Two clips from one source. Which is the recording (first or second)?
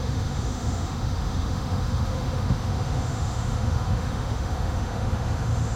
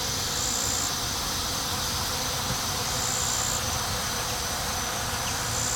second